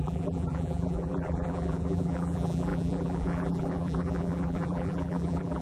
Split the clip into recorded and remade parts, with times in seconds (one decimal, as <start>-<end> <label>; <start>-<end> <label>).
0.0-5.6 remade